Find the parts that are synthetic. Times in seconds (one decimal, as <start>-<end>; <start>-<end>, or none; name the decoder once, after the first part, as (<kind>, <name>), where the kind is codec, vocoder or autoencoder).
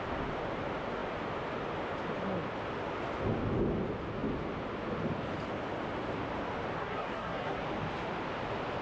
6.8-7.6 (codec, SNAC)